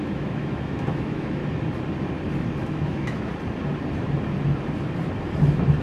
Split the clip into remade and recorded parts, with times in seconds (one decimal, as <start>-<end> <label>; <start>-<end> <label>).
0.0-1.4 remade; 1.4-2.6 recorded; 2.6-3.3 remade; 3.3-5.8 recorded